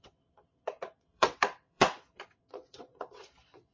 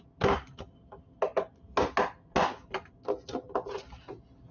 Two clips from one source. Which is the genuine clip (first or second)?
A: second